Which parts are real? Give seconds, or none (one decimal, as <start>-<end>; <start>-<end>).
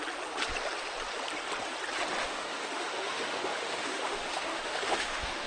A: 0.0-2.2